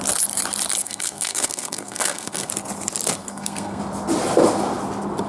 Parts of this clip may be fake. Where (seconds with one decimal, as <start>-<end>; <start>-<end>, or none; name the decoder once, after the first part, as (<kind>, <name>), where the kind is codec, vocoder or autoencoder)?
0.8-2.5 (codec, SNAC); 3.2-3.8